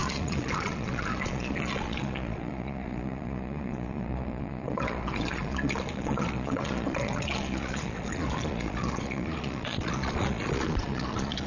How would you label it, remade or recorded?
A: remade